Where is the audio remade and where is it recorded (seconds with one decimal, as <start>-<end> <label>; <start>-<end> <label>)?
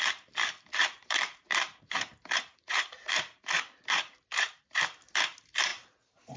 0.0-0.8 recorded; 0.8-4.6 remade; 4.6-5.7 recorded; 5.7-6.4 remade